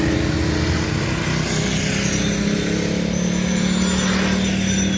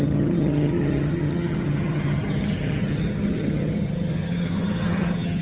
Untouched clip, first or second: first